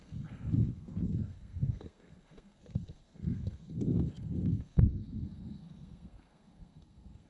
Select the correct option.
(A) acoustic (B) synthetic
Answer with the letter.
B